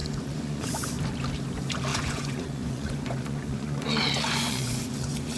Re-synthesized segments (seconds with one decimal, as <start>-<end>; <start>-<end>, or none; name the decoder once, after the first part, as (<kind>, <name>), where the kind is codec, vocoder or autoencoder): 0.0-0.9 (vocoder, Vocos); 1.9-5.4